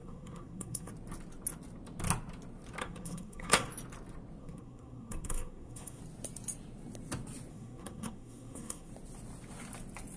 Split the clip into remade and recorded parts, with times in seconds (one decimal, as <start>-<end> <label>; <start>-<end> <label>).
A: 0.0-0.9 remade; 0.9-2.8 recorded; 2.8-3.7 remade; 3.7-4.4 recorded; 4.4-6.0 remade; 6.0-7.5 recorded; 7.5-8.9 remade; 8.9-10.2 recorded